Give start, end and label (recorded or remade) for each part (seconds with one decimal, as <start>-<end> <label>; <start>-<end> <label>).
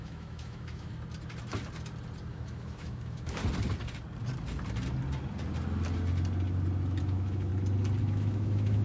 0.0-0.9 remade; 0.9-2.3 recorded; 2.3-3.4 remade; 3.4-7.0 recorded; 7.0-7.5 remade; 7.5-8.0 recorded; 8.0-8.8 remade